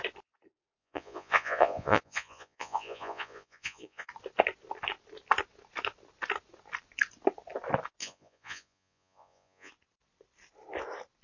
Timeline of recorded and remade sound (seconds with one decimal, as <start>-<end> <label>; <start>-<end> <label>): 0.0-0.8 recorded; 0.8-4.1 remade; 4.1-8.0 recorded; 8.0-9.7 remade; 9.7-11.2 recorded